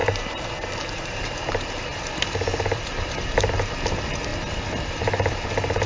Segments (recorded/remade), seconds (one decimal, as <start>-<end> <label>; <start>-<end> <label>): 0.0-4.3 remade; 4.3-4.9 recorded; 4.9-5.9 remade